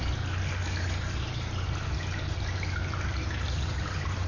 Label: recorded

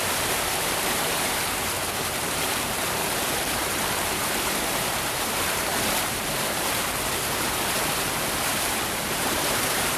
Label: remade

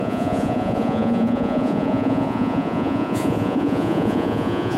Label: remade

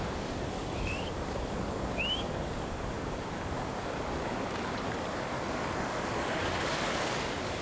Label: remade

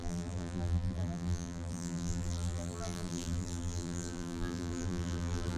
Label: remade